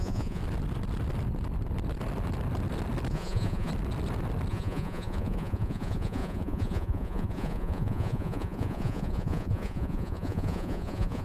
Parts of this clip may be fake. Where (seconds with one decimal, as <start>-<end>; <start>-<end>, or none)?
0.0-0.4; 3.1-3.7; 4.5-11.2